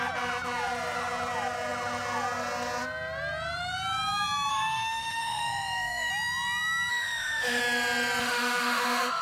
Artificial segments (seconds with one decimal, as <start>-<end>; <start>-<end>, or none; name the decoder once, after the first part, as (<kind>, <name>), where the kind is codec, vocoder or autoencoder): 4.5-6.1 (autoencoder, DAC-VAE); 6.9-7.6; 8.2-9.2